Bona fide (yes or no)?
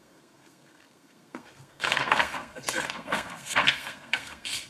no